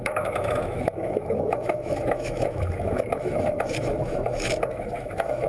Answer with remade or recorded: remade